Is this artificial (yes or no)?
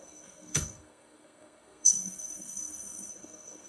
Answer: yes